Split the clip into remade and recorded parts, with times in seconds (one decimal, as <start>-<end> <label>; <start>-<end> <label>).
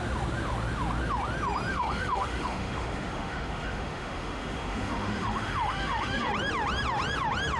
0.0-1.7 recorded; 1.7-6.3 remade; 6.3-7.6 recorded